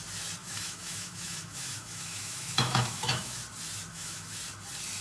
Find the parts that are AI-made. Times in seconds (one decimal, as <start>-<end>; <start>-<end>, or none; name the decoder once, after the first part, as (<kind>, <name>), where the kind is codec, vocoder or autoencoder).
0.4-3.4 (autoencoder, DAC-VAE); 3.9-4.4